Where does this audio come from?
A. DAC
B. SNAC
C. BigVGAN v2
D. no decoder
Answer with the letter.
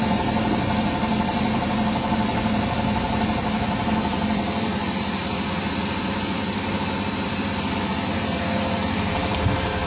C